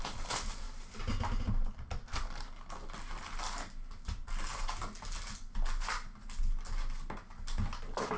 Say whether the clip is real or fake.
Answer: real